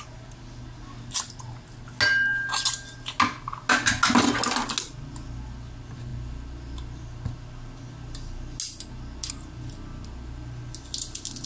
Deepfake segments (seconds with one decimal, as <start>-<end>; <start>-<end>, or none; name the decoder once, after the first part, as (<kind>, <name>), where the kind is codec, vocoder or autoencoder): none